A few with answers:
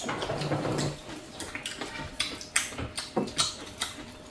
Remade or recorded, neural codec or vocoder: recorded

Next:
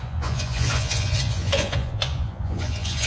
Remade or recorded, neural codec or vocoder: remade, vocoder, Vocos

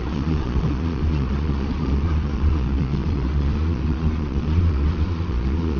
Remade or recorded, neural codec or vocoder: remade, vocoder, Vocos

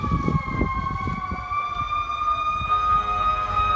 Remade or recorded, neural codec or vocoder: recorded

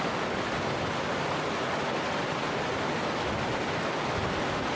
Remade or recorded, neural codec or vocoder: recorded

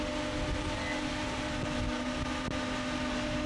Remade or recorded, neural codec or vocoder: recorded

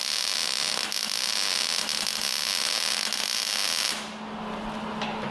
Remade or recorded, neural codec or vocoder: recorded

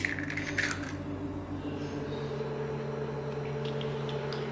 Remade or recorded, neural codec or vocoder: recorded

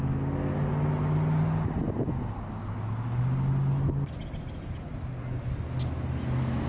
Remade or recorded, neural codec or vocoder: recorded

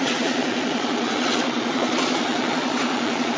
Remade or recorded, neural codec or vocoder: remade, vocoder, Vocos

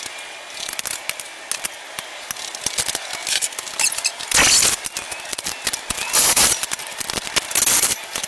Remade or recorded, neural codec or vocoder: recorded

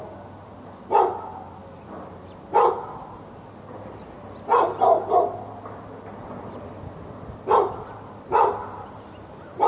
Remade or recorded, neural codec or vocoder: recorded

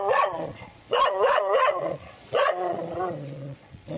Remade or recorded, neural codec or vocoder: remade, vocoder, Vocos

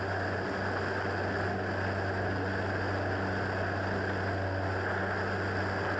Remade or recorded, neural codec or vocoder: recorded